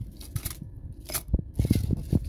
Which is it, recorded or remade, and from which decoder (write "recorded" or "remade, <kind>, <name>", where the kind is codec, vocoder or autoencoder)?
recorded